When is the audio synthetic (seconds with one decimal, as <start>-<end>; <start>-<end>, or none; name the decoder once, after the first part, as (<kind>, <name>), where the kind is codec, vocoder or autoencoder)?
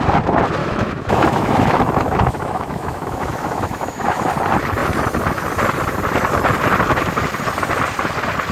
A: 0.6-4.3 (autoencoder, DAC-VAE)